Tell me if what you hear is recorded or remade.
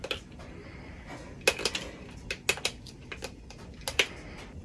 recorded